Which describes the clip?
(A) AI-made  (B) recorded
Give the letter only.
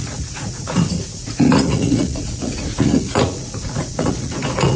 A